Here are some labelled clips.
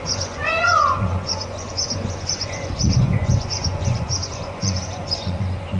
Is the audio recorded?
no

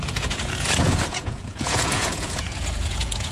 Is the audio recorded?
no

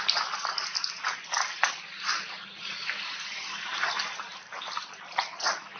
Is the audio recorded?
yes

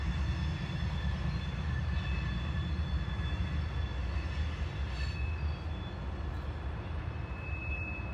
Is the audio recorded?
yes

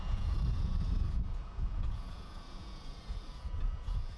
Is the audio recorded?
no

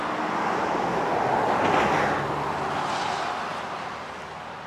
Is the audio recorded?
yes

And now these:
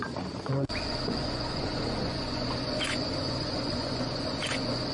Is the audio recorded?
no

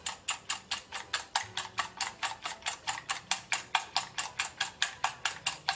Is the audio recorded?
yes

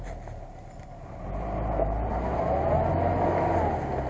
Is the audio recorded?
yes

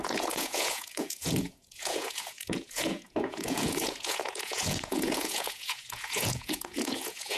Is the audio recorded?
no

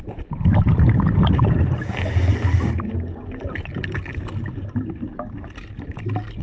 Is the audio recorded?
yes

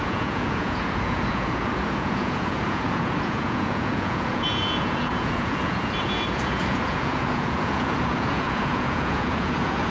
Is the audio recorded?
no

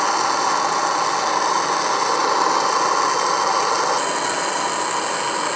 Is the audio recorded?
yes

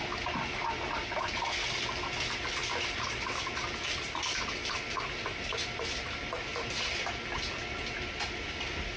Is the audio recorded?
yes